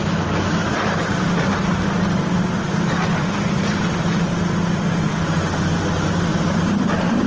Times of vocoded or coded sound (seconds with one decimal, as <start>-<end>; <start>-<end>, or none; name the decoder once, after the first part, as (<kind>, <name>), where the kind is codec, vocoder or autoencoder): 0.6-4.3 (vocoder, BigVGAN v2); 6.3-7.3